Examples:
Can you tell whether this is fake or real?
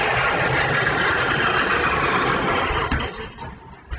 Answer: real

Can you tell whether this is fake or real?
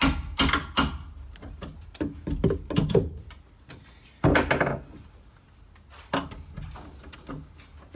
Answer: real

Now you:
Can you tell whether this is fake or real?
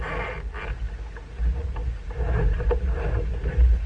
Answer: real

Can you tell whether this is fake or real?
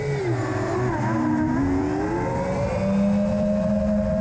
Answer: real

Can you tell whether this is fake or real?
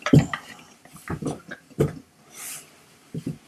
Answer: real